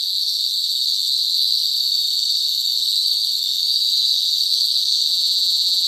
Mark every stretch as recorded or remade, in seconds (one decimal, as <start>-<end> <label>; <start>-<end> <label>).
0.0-5.1 remade; 5.1-5.9 recorded